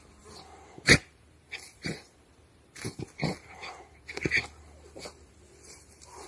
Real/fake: fake